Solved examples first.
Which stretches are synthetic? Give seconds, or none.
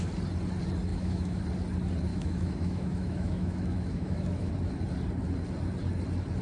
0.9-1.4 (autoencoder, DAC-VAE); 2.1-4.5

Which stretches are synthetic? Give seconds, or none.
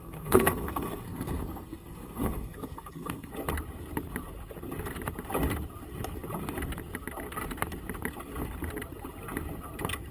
0.0-3.3 (codec, SNAC)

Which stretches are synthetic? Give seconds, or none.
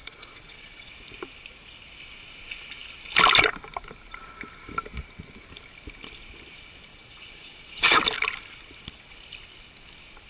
0.0-0.9 (vocoder, Vocos); 6.9-8.0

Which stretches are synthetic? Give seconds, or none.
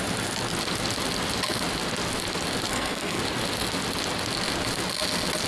2.7-3.2 (codec, SNAC)